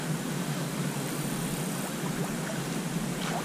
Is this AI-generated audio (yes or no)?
no